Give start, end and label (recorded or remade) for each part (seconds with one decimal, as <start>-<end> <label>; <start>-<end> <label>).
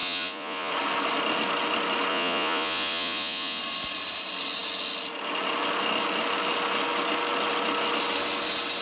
0.0-0.7 remade; 0.7-2.1 recorded; 2.1-3.6 remade; 3.6-8.8 recorded